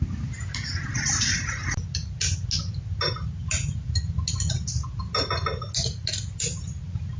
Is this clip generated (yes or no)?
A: no